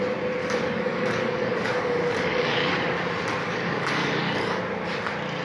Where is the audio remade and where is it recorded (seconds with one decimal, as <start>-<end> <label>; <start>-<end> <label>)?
0.0-0.4 recorded; 0.4-2.7 remade; 2.7-3.4 recorded; 3.4-4.6 remade; 4.6-5.4 recorded

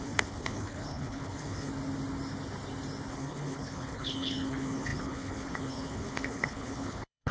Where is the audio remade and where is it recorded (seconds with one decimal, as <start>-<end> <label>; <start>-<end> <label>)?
0.0-1.7 remade; 1.7-3.1 recorded; 3.1-7.3 remade

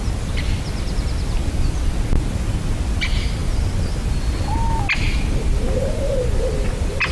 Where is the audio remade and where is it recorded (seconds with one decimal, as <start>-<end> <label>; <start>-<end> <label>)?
0.0-7.1 recorded

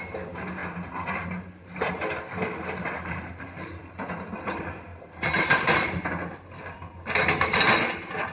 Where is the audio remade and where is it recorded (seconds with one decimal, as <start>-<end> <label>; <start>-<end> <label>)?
0.0-0.6 recorded; 0.6-4.1 remade; 4.1-4.9 recorded; 4.9-6.0 remade; 6.0-8.3 recorded